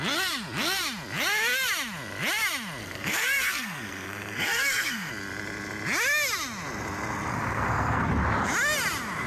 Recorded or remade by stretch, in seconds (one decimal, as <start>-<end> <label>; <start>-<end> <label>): 0.0-2.8 recorded; 2.8-5.1 remade; 5.1-7.3 recorded; 7.3-8.1 remade; 8.1-9.3 recorded